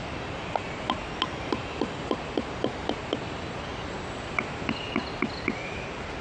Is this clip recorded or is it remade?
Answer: recorded